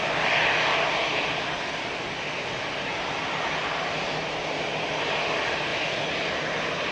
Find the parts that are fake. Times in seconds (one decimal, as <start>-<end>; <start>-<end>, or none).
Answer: none